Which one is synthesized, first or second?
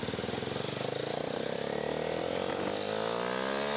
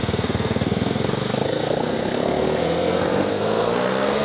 second